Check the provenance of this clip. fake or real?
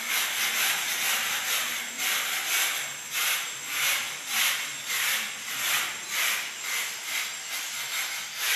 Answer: real